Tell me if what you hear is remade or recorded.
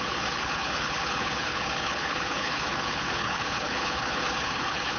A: remade